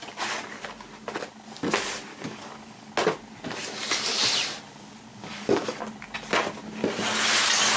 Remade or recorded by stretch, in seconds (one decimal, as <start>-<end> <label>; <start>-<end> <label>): 0.0-2.1 recorded; 2.1-2.9 remade; 2.9-5.1 recorded; 5.1-5.8 remade; 5.8-7.8 recorded